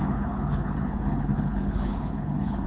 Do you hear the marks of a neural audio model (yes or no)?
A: yes